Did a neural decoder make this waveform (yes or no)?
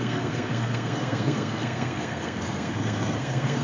yes